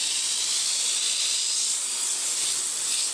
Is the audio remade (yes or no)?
no